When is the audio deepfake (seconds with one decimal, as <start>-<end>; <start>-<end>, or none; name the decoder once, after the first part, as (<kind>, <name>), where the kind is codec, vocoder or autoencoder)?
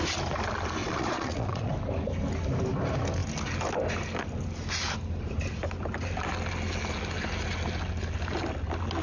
0.8-1.7 (vocoder, Vocos)